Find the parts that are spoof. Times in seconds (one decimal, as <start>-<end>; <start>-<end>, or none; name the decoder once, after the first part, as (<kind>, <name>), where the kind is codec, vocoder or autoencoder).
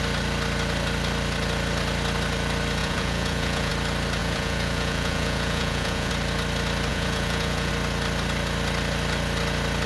2.8-3.7 (vocoder, Vocos); 4.2-6.1; 6.9-7.7